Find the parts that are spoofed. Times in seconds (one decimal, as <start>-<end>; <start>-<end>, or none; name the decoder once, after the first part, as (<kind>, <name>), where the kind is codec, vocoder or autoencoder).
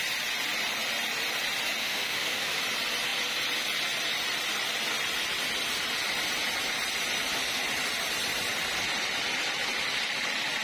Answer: 1.8-2.6 (autoencoder, DAC-VAE)